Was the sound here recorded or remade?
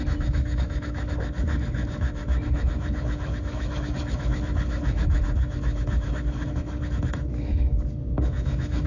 remade